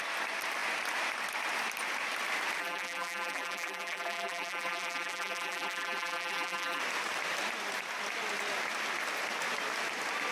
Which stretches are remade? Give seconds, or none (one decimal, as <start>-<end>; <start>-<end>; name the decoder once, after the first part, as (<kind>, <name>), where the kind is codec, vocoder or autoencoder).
2.6-6.8 (vocoder, BigVGAN v2)